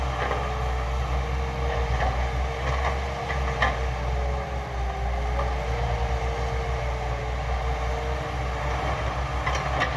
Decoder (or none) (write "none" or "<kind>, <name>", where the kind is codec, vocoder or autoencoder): none